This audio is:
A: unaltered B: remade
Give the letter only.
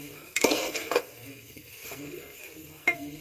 B